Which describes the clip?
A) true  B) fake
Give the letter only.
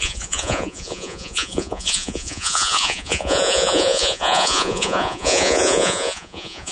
B